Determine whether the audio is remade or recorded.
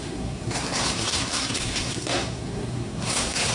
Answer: remade